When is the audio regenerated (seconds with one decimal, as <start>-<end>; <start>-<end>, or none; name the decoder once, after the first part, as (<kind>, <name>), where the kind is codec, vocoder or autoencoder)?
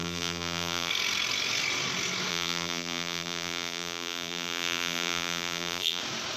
0.0-0.9 (vocoder, BigVGAN v2); 2.3-6.0